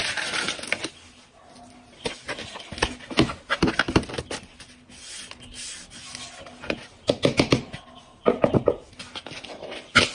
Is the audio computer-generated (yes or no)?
no